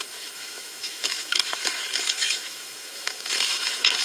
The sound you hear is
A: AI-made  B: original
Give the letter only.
A